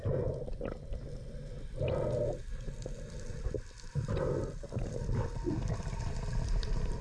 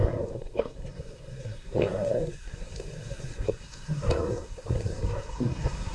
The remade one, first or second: second